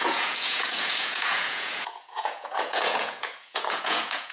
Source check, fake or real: fake